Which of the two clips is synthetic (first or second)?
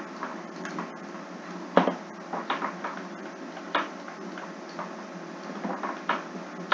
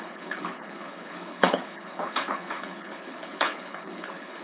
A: second